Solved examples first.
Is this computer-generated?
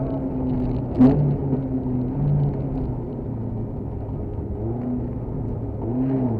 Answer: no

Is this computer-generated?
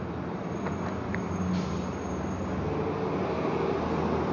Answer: no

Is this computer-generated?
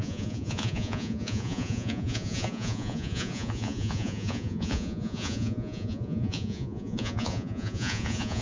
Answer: yes